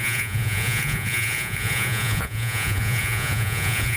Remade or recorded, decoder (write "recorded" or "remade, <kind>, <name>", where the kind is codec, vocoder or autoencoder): remade, vocoder, Vocos